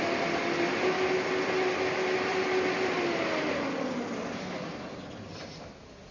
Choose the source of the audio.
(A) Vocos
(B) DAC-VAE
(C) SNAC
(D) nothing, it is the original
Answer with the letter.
D